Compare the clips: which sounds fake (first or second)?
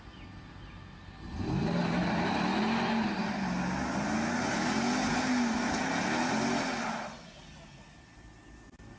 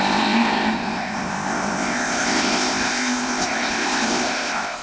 second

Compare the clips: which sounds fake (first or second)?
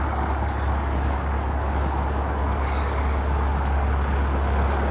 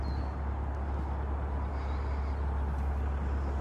first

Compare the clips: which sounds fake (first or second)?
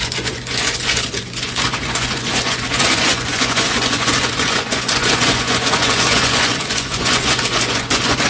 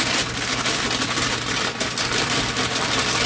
first